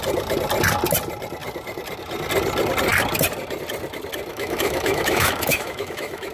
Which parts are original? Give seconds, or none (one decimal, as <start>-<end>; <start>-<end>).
0.0-4.3